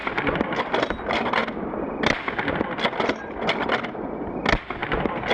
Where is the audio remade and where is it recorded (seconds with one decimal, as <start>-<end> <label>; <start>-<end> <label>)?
0.0-5.3 recorded